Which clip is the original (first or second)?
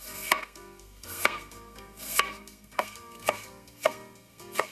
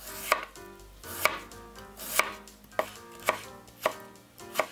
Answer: second